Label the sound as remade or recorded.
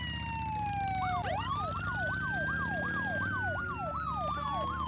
recorded